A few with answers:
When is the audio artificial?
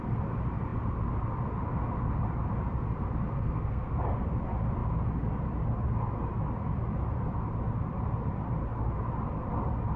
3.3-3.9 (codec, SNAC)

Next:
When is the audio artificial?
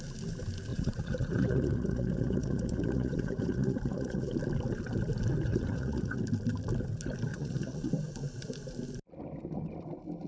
0.7-4.3 (vocoder, Vocos); 5.5-6.2; 7.3-7.9